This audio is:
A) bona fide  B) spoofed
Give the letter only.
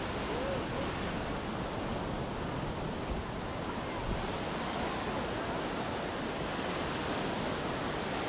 A